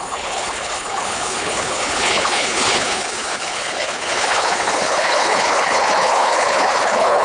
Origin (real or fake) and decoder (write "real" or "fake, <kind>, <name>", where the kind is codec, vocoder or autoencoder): fake, codec, HILCodec